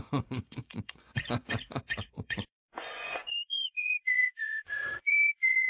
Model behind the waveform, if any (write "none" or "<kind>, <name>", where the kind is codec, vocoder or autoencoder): vocoder, Vocos